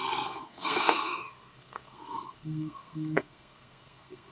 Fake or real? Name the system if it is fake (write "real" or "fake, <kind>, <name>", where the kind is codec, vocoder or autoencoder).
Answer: fake, codec, SNAC